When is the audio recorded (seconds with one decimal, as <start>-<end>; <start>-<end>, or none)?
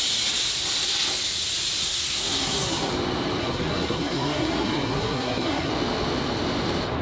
0.0-1.8; 2.9-3.4; 5.7-7.0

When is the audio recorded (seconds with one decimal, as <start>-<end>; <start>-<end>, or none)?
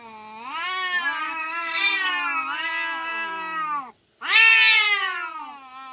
0.0-1.4; 2.1-5.9